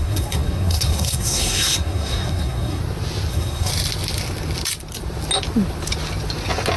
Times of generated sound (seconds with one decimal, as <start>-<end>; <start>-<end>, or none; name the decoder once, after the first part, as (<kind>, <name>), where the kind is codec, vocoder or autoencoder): 0.0-2.8 (codec, SNAC); 3.3-3.7